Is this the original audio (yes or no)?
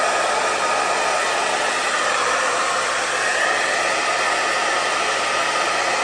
yes